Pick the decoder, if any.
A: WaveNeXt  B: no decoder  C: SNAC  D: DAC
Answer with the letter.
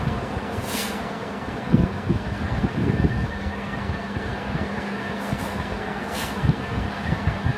C